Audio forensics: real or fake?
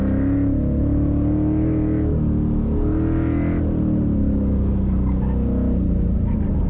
real